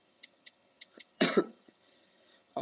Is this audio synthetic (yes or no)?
yes